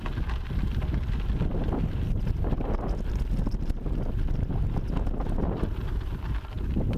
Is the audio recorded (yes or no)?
yes